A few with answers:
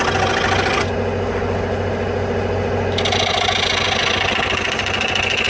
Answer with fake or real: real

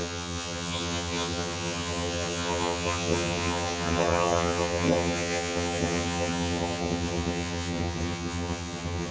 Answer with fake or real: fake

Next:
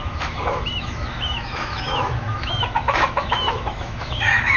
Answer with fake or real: fake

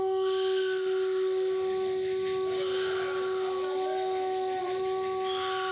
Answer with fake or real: real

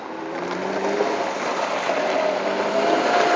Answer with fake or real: real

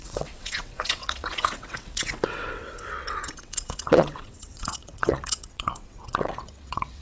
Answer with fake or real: fake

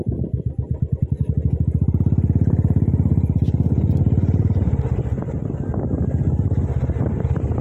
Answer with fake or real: real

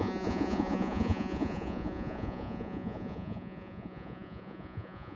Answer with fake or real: fake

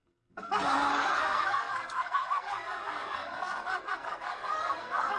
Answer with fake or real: fake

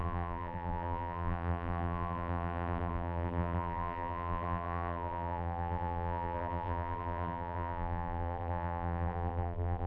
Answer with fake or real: fake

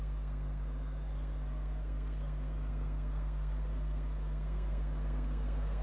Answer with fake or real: fake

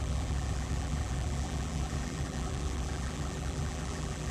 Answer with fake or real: fake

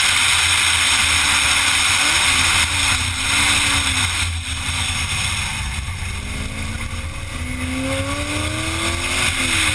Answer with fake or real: real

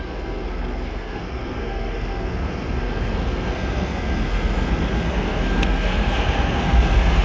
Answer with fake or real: fake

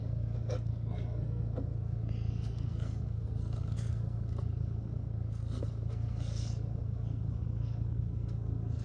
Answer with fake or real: fake